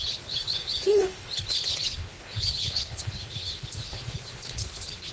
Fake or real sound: fake